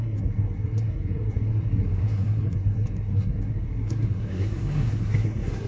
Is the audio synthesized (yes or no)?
yes